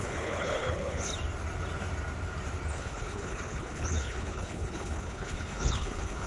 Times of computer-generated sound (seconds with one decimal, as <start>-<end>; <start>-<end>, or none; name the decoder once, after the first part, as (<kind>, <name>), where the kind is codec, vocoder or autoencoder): 0.0-1.1 (codec, HILCodec); 2.7-6.3